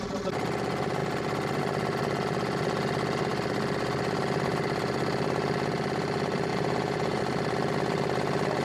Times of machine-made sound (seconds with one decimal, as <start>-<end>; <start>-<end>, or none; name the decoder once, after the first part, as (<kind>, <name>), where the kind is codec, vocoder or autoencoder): 6.5-7.2 (vocoder, Vocos)